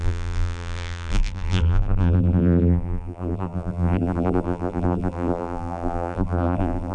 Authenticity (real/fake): fake